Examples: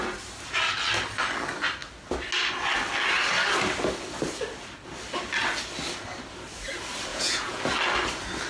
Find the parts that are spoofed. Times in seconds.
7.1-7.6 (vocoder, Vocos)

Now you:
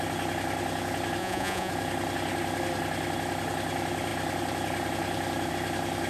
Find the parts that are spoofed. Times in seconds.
1.2-1.7 (vocoder, Vocos)

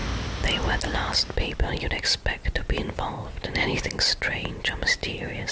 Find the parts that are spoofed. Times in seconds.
none

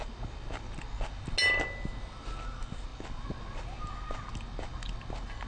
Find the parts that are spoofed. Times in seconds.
none

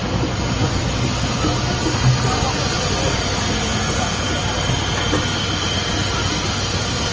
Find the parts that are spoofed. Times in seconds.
3.7-4.3 (vocoder, Vocos)

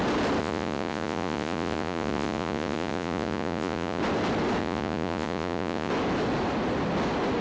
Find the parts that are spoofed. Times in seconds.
0.4-4.0 (vocoder, Vocos); 4.6-5.9